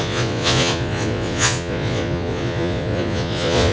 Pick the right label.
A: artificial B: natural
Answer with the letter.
A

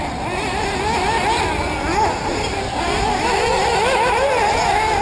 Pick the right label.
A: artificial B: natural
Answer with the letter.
B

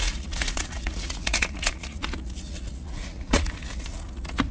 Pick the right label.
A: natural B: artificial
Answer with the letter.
B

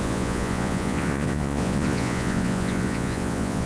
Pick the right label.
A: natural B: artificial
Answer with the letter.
B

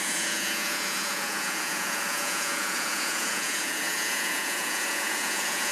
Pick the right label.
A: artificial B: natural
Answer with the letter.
A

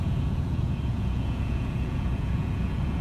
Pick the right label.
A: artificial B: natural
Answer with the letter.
A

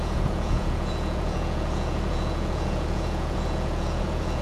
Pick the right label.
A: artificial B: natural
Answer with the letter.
A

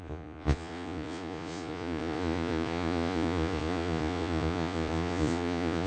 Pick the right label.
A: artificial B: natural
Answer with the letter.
A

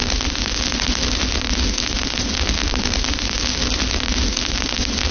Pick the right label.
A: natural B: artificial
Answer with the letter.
A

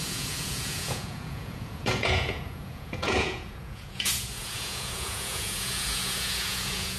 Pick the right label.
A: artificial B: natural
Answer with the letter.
A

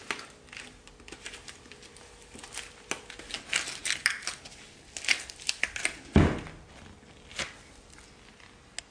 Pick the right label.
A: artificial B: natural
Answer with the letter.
B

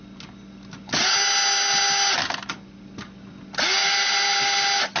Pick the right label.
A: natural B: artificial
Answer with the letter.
A